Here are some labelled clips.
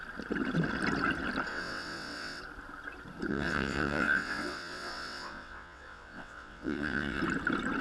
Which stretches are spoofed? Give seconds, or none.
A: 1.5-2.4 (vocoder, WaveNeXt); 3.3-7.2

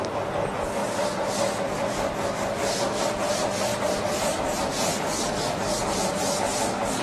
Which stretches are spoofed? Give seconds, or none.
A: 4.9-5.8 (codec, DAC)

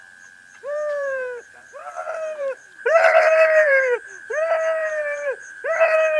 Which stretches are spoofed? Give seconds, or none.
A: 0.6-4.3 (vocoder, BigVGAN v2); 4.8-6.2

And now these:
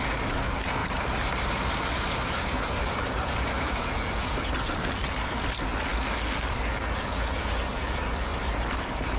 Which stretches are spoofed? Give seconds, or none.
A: 0.8-3.9 (vocoder, BigVGAN v2); 8.3-9.2